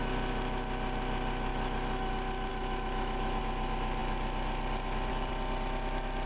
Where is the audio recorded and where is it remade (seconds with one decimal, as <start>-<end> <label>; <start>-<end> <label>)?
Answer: 0.0-1.5 recorded; 1.5-2.1 remade; 2.1-2.5 recorded; 2.5-3.4 remade; 3.4-6.3 recorded